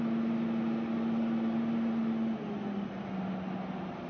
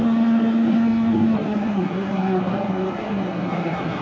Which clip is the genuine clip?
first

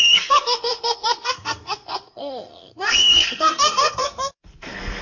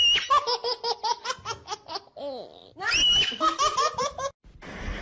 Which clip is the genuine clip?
second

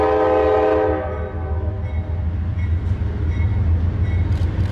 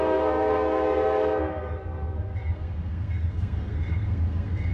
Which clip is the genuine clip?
first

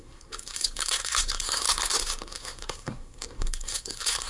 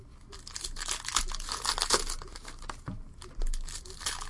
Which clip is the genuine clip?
second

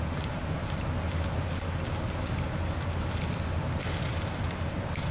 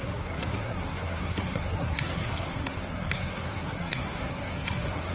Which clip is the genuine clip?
first